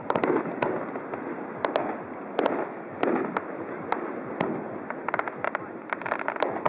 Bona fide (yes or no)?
yes